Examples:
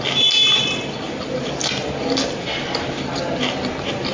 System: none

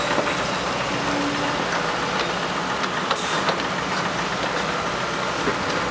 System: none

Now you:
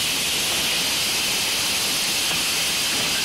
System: none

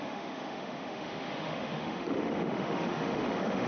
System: autoencoder, DAC-VAE